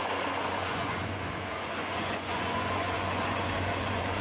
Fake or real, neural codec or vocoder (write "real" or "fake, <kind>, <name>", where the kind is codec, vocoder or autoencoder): fake, vocoder, Vocos